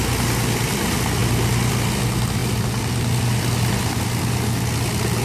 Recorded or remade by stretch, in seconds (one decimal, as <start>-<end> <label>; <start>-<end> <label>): 0.0-5.2 recorded